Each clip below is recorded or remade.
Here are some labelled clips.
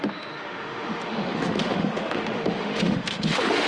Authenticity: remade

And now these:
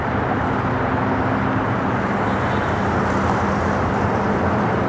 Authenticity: recorded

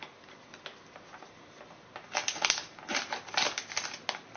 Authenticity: recorded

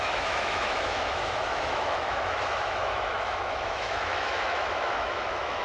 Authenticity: remade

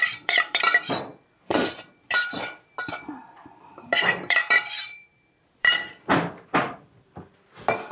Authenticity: remade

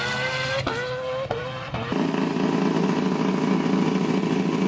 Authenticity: recorded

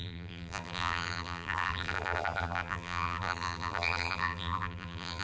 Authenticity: remade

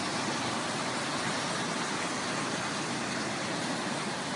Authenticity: recorded